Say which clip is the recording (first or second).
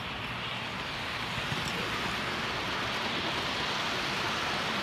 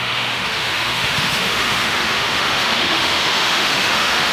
first